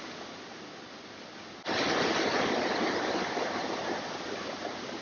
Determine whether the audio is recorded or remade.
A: recorded